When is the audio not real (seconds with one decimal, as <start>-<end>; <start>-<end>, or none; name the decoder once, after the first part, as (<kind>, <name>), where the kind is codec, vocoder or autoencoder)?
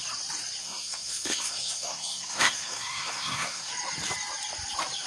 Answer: 0.6-3.7 (codec, SNAC)